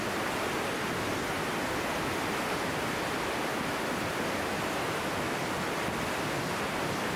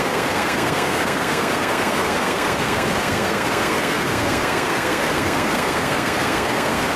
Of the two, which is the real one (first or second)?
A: first